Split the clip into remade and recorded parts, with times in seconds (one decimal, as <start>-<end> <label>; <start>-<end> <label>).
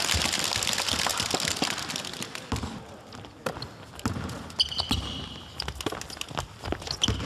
0.0-1.1 recorded; 1.1-1.9 remade; 1.9-7.3 recorded